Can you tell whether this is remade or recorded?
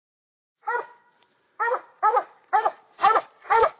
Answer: remade